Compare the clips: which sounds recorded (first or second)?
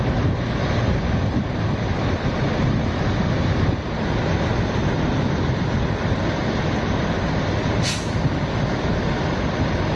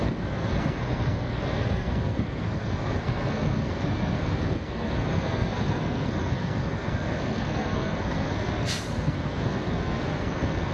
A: first